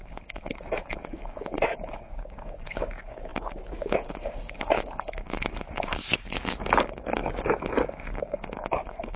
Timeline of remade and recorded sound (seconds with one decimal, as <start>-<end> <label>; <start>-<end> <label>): 0.0-9.2 remade